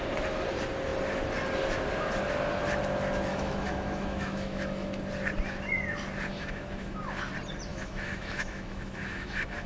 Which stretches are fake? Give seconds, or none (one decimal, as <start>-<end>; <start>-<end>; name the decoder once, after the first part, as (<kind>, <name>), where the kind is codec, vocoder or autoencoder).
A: 3.3-5.0 (autoencoder, DAC-VAE); 6.3-7.0; 7.7-9.7